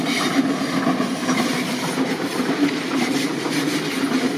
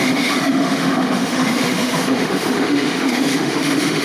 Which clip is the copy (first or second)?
second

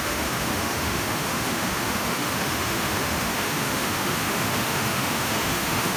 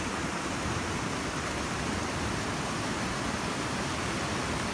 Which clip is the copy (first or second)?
first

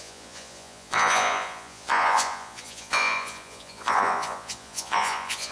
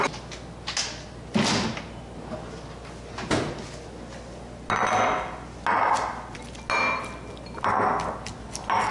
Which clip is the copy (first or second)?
first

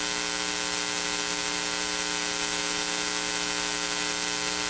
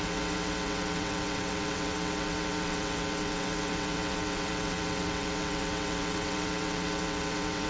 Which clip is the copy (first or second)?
second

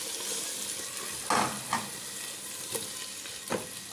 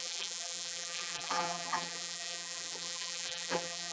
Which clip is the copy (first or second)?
second